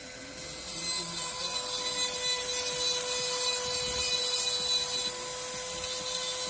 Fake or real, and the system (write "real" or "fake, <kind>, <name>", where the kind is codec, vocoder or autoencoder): real